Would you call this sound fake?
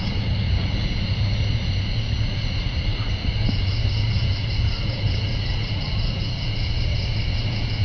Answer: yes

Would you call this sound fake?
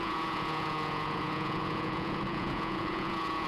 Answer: yes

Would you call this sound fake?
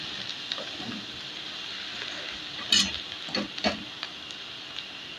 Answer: no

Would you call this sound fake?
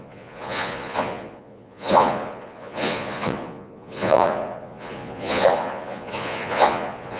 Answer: yes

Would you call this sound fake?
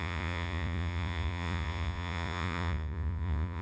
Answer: yes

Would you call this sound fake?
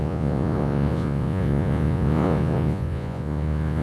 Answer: yes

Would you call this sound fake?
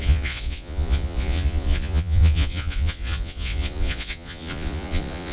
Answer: yes